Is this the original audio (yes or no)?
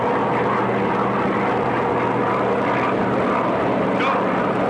yes